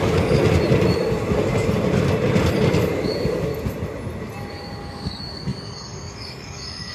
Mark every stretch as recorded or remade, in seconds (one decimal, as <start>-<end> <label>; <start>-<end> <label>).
0.0-0.4 remade; 0.4-2.9 recorded; 2.9-3.5 remade; 3.5-4.5 recorded; 4.5-6.9 remade